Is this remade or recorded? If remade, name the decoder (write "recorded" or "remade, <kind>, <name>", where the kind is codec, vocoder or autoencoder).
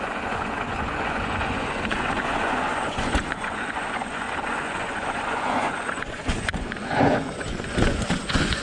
remade, vocoder, Vocos